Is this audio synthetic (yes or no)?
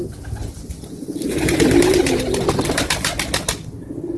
no